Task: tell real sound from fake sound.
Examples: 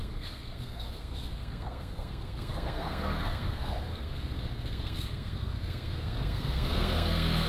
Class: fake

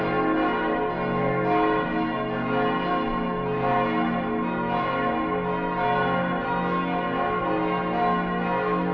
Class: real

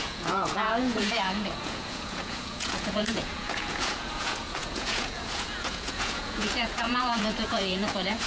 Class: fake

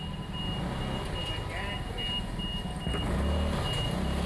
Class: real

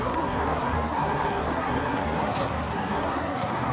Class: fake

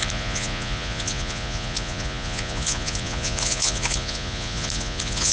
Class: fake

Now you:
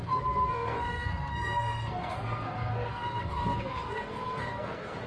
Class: fake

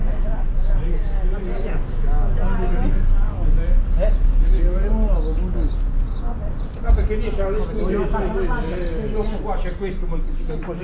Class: real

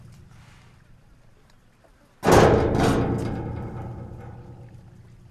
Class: real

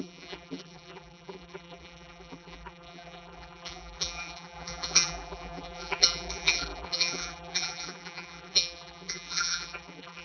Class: fake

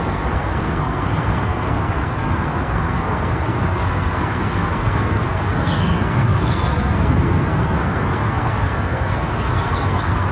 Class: fake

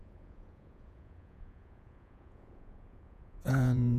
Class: fake